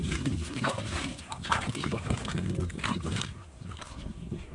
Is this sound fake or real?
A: fake